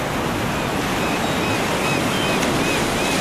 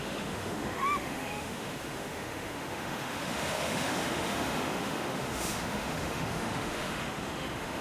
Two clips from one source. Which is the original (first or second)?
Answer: first